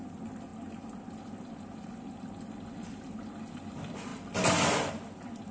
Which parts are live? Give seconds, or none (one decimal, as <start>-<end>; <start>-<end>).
0.0-5.5